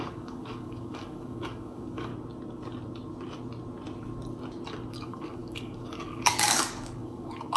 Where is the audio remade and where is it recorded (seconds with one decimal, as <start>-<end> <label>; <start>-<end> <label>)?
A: 0.0-2.1 remade; 2.1-4.9 recorded; 4.9-7.6 remade